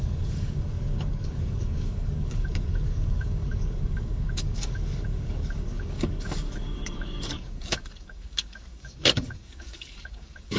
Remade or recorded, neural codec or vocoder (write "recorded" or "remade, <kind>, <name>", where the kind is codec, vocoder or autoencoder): remade, codec, DAC